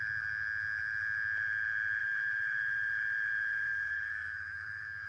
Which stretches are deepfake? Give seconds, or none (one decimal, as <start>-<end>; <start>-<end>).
2.0-5.1